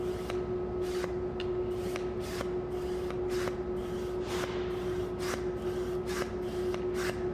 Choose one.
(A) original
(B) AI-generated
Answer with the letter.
A